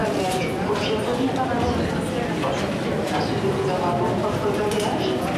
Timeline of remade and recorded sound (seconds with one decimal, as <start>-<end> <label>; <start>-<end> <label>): 0.0-5.4 recorded